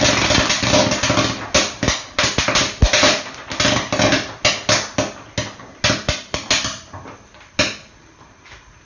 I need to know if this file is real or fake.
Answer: real